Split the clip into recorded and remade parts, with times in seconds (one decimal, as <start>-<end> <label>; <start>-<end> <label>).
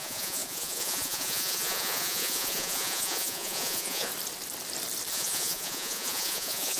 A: 0.0-4.1 remade; 4.1-5.1 recorded; 5.1-6.8 remade